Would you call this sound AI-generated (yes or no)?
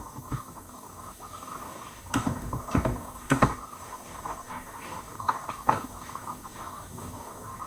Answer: yes